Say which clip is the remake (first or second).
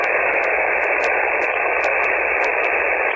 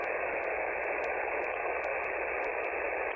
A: first